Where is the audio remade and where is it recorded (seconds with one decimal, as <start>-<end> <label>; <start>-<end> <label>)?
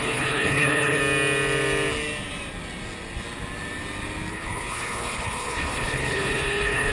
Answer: 0.0-1.0 remade; 1.0-4.3 recorded; 4.3-6.9 remade